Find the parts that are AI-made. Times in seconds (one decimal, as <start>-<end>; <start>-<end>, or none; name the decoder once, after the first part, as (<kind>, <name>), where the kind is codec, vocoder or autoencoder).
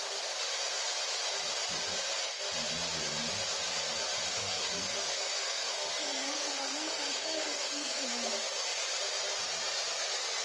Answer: 4.4-8.3 (codec, SNAC)